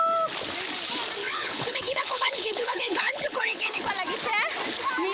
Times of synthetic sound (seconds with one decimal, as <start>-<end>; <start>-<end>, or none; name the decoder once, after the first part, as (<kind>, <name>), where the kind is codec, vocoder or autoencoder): 1.2-3.9 (codec, HILCodec)